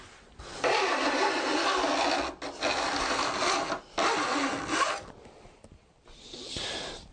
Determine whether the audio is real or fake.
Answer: real